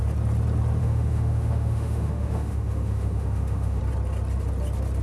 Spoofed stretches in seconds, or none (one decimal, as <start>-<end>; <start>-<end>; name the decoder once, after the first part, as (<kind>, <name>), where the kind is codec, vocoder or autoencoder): 0.8-3.8 (autoencoder, DAC-VAE)